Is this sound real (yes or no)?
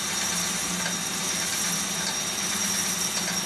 yes